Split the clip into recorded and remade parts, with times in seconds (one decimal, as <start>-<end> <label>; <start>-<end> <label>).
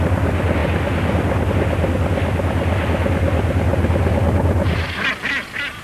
0.0-5.8 recorded